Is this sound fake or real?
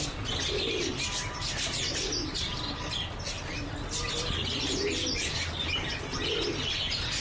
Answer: real